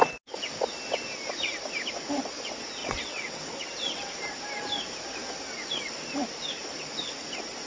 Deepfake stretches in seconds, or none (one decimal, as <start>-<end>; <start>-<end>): 2.8-4.1